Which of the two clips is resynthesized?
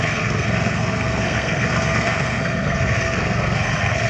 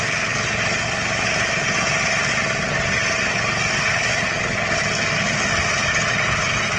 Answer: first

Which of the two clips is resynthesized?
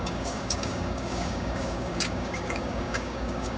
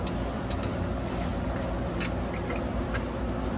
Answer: first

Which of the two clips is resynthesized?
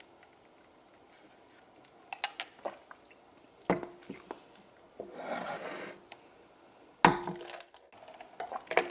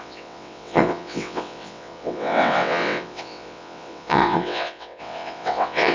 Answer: second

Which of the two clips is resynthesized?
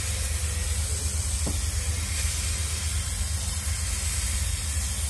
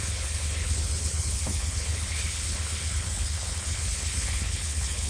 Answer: second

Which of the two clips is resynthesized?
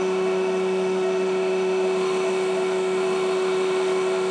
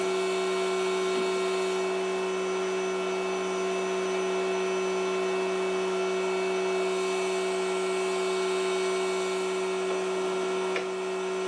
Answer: first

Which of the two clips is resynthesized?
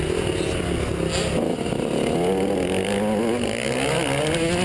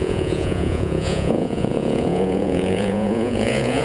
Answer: second